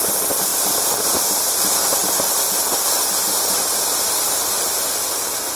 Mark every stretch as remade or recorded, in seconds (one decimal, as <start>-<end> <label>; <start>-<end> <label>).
0.0-5.6 recorded